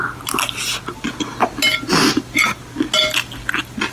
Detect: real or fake real